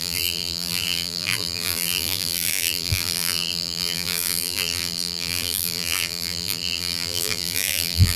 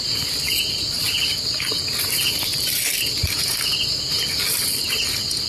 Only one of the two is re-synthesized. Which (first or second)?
first